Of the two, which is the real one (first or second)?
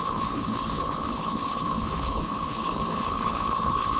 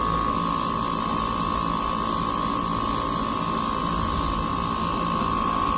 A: second